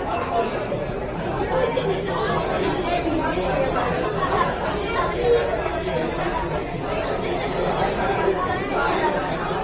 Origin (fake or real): real